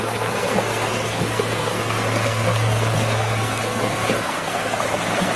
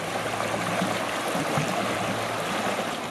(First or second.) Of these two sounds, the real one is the second